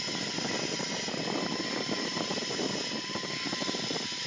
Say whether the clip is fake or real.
fake